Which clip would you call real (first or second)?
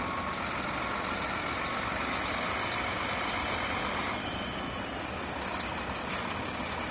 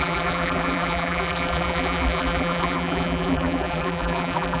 first